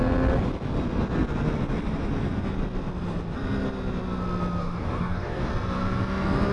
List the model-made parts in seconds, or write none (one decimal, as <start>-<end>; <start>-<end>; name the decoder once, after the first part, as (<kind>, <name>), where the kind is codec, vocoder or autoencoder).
4.6-5.5 (codec, DAC)